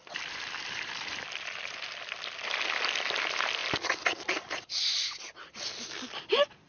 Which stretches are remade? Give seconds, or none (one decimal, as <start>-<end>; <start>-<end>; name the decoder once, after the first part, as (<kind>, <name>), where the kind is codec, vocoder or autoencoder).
0.0-1.5 (vocoder, BigVGAN v2); 3.6-6.7